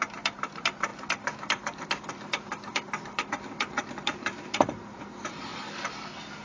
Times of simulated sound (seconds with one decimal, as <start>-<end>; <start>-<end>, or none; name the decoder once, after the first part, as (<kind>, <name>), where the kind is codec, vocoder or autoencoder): 0.0-5.5 (vocoder, BigVGAN v2)